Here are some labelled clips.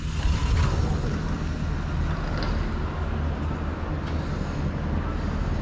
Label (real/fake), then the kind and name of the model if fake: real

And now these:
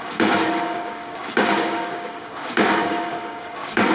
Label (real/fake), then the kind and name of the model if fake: fake, codec, DAC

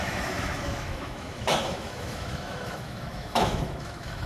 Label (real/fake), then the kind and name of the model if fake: fake, autoencoder, DAC-VAE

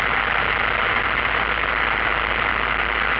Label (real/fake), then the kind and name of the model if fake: real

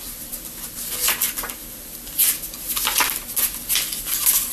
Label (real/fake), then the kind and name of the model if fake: real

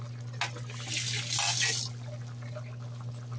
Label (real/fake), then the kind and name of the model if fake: real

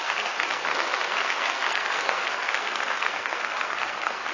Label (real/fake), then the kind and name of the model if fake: fake, codec, SNAC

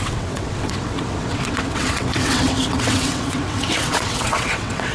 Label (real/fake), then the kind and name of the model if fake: fake, vocoder, WaveNeXt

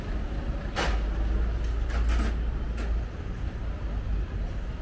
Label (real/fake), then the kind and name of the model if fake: real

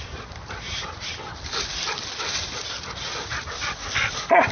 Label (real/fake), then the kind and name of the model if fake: real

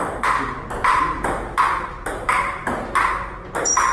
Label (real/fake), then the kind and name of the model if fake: real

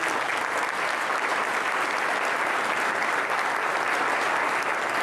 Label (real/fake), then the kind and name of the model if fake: real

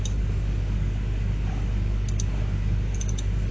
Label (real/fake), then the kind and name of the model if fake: fake, codec, DAC